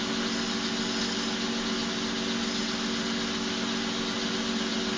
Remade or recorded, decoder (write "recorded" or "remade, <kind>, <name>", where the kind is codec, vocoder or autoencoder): recorded